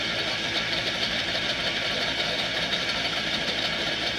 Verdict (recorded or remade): remade